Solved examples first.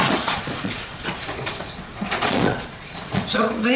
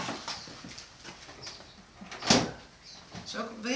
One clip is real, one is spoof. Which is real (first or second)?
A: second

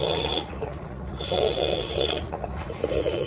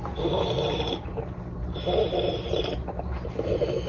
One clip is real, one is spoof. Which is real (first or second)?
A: second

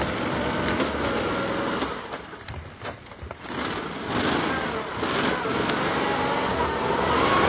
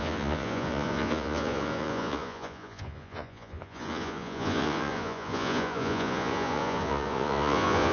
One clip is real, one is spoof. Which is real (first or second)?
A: first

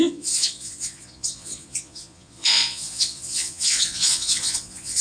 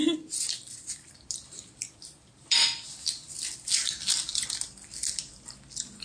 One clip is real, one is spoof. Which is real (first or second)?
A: second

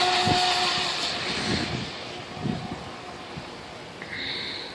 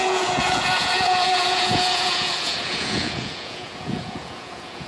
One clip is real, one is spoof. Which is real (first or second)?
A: first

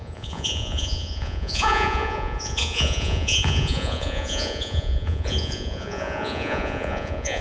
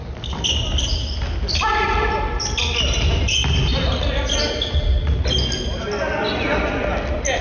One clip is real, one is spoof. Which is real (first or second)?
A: second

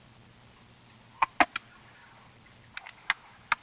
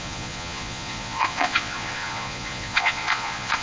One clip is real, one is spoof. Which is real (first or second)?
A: first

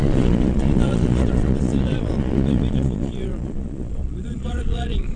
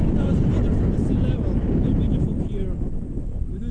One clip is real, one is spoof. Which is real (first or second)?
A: second